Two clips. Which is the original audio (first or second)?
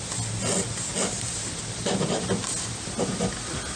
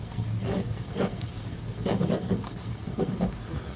first